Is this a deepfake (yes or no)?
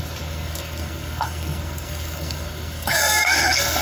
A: yes